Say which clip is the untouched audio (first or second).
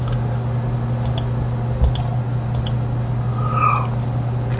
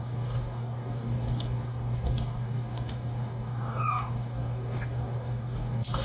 first